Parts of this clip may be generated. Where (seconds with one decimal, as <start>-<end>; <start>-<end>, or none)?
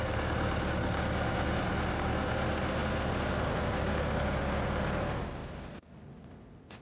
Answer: 5.4-6.3